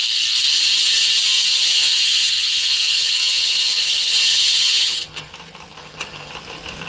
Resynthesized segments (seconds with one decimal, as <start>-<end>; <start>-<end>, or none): 1.5-5.3; 5.8-6.3

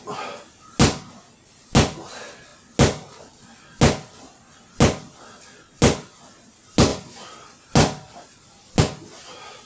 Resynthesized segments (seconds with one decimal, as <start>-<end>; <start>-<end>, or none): none

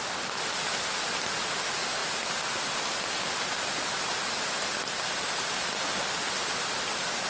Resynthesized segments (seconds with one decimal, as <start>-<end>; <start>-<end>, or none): none

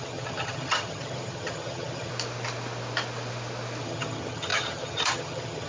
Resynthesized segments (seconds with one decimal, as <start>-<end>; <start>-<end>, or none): 0.0-2.1; 3.8-5.7

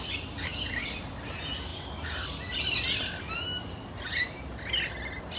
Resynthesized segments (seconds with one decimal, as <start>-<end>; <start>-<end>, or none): none

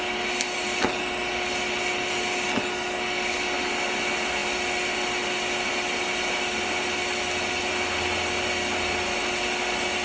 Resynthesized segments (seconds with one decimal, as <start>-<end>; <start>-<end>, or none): none